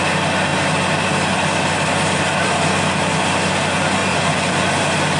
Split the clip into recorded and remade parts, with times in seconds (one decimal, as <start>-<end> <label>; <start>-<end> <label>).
0.0-4.0 recorded; 4.0-4.8 remade; 4.8-5.2 recorded